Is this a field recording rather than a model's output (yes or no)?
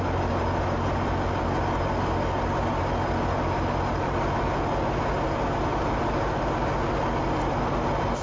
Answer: yes